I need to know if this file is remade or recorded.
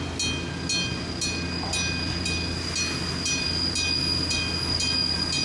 recorded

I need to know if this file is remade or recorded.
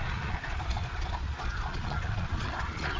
remade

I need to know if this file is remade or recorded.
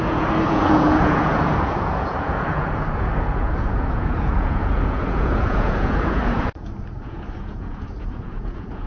remade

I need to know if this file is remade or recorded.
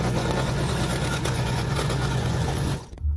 remade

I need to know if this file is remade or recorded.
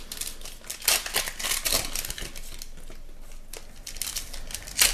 recorded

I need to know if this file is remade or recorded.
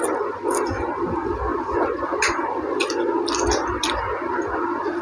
recorded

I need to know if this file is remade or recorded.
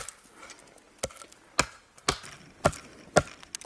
recorded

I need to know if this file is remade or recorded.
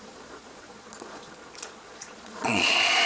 remade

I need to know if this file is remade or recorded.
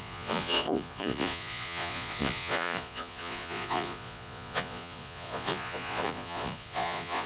remade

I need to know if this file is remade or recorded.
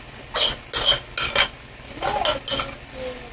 recorded